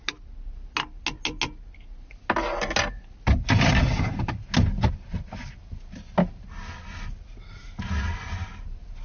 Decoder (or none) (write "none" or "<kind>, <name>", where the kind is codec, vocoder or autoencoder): none